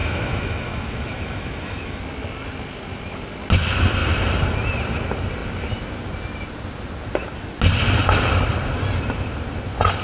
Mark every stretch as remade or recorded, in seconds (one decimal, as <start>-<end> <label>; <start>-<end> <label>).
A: 0.0-2.0 remade; 2.0-10.0 recorded